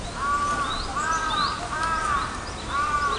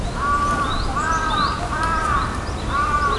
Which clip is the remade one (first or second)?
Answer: second